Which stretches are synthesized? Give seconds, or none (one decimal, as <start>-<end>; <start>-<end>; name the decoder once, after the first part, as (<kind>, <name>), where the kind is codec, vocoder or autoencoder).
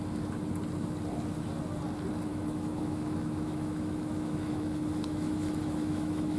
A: 2.3-6.4 (autoencoder, DAC-VAE)